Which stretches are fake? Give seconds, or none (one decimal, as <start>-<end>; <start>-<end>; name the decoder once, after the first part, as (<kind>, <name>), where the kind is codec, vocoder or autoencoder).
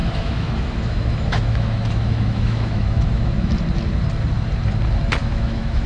0.0-3.5 (autoencoder, DAC-VAE); 5.2-5.9